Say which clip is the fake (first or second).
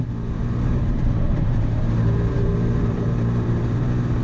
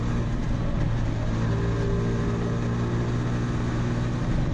first